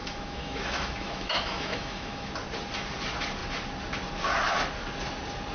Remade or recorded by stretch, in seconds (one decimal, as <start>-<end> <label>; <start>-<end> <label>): 0.0-2.3 remade; 2.3-5.5 recorded